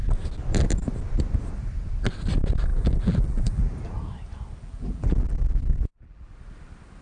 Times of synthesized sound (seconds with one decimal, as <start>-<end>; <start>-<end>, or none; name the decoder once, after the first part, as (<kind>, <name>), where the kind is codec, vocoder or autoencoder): 2.7-3.7 (vocoder, BigVGAN v2); 4.6-6.3